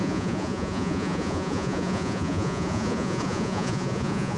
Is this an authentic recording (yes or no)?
no